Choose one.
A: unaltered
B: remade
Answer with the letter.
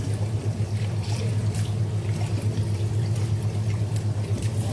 A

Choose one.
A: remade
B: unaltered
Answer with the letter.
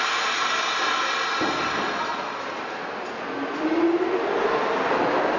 B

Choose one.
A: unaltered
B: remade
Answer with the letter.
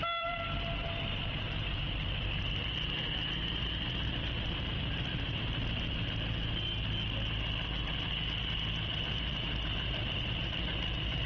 B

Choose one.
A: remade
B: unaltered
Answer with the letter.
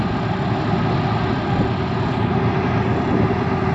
B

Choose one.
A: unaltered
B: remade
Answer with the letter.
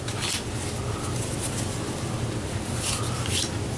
A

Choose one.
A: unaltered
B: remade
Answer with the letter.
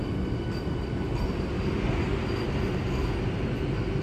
A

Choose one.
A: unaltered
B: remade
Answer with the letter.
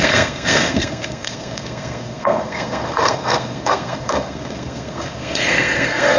B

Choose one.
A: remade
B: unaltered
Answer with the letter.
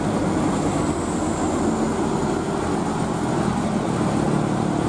B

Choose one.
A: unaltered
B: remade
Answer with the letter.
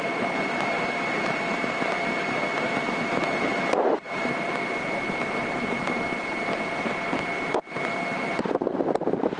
B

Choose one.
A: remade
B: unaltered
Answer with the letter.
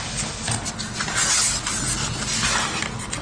B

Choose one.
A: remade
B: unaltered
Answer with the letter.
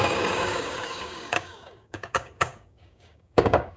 A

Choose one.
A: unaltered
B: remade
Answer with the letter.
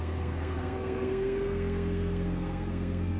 B